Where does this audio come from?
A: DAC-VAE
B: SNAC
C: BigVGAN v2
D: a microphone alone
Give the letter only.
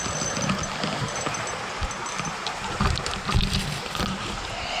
D